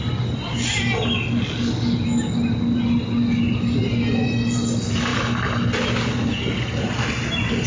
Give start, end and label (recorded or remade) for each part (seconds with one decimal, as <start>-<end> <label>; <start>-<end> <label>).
0.0-7.7 recorded